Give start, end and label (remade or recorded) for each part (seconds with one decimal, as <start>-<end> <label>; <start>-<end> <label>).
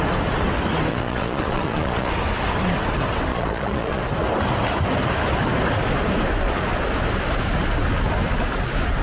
0.0-0.9 recorded; 0.9-2.1 remade; 2.1-3.3 recorded; 3.3-4.0 remade; 4.0-9.0 recorded